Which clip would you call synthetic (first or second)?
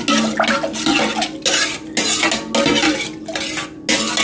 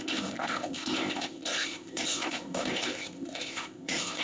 second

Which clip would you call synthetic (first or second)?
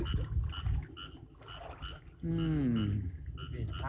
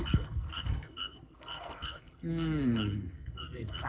second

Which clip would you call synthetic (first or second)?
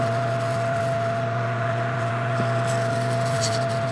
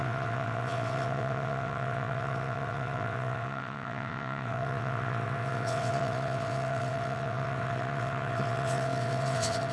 second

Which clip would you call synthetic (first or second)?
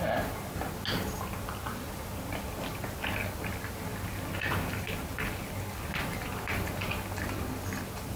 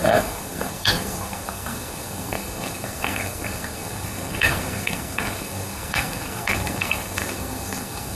second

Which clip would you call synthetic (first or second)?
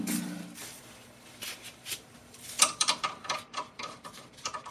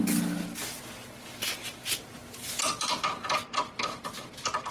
first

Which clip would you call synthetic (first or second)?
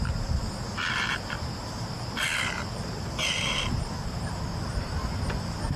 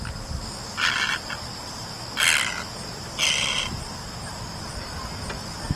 first